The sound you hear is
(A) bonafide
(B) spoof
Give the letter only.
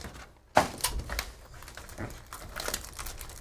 A